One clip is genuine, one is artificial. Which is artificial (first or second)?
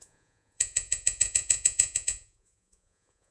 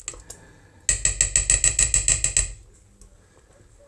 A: first